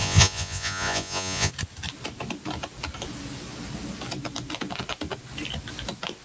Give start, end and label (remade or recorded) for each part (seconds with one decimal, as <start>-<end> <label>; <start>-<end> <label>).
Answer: 0.0-1.5 remade; 1.5-6.2 recorded